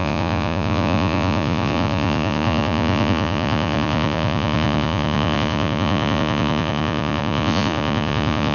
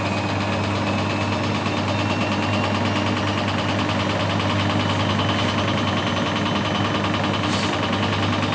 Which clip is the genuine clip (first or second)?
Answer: second